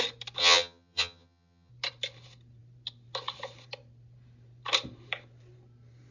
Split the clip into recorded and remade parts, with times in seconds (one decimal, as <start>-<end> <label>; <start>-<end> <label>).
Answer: 0.0-0.4 recorded; 0.4-1.7 remade; 1.7-6.1 recorded